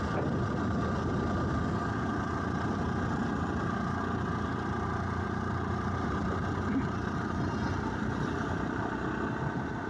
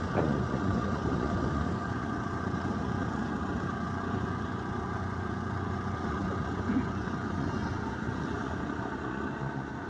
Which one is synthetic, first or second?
second